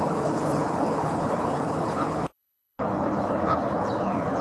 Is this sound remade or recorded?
remade